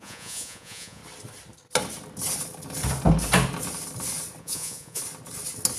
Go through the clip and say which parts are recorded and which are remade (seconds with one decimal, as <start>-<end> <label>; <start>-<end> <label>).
0.0-1.0 remade; 1.0-4.4 recorded; 4.4-5.0 remade; 5.0-5.8 recorded

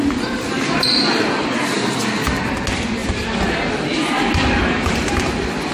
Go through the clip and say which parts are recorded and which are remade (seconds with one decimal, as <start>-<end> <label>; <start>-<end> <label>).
0.0-5.7 recorded

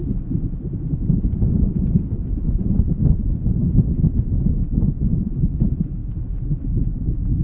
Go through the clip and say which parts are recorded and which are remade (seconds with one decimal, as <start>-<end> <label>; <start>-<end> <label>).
0.0-6.0 recorded; 6.0-7.4 remade

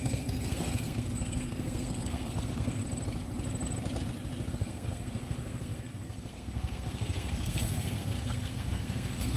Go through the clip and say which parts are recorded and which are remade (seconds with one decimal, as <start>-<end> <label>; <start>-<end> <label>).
0.0-2.8 remade; 2.8-4.5 recorded; 4.5-9.4 remade

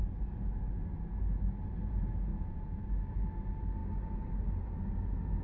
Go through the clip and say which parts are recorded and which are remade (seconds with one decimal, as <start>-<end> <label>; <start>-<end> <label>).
0.0-2.3 recorded; 2.3-2.9 remade; 2.9-5.4 recorded

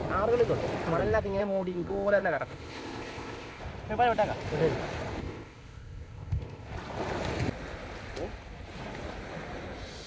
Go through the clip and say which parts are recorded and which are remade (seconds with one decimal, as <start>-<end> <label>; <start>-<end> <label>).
0.0-1.4 recorded; 1.4-3.6 remade; 3.6-5.2 recorded; 5.2-6.7 remade; 6.7-10.1 recorded

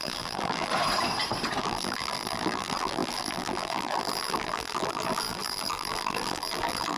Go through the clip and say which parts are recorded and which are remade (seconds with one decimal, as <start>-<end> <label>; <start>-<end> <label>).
0.0-0.7 remade; 0.7-1.6 recorded; 1.6-7.0 remade